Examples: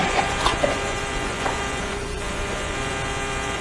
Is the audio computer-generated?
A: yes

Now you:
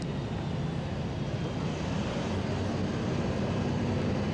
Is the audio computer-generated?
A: no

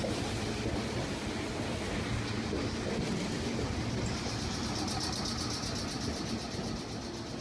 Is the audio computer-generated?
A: no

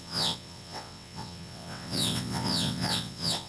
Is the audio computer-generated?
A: yes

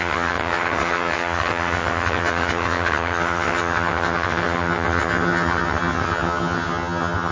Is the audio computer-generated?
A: yes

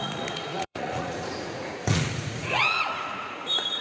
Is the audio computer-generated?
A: yes